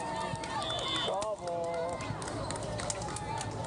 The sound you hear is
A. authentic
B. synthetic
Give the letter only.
A